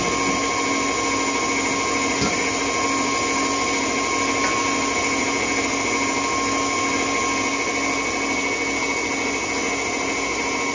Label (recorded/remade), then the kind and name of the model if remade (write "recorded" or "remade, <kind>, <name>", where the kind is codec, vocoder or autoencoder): recorded